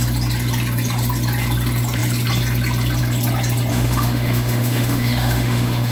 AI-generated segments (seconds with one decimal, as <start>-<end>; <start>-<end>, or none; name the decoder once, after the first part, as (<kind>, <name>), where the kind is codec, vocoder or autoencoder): 3.7-5.9 (autoencoder, DAC-VAE)